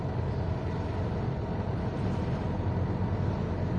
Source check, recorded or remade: recorded